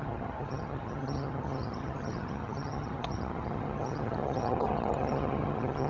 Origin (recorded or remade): remade